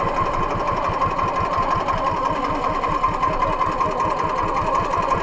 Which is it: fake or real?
real